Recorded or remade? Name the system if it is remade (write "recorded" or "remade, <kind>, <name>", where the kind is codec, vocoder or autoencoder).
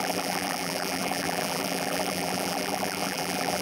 remade, vocoder, BigVGAN v2